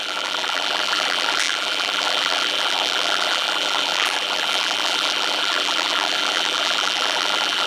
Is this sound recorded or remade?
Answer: remade